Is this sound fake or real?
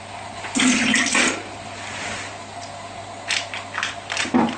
real